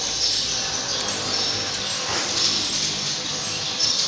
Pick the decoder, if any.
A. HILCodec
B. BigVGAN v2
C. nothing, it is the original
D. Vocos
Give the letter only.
C